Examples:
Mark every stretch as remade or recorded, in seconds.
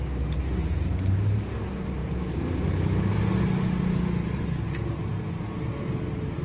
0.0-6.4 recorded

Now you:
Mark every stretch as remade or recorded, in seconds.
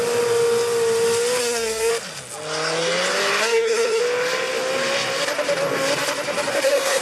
0.0-1.4 recorded; 1.4-1.9 remade; 1.9-3.4 recorded; 3.4-4.0 remade; 4.0-6.5 recorded; 6.5-7.0 remade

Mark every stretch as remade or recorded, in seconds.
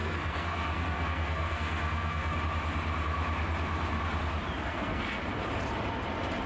0.0-2.4 remade; 2.4-4.7 recorded; 4.7-5.2 remade; 5.2-6.5 recorded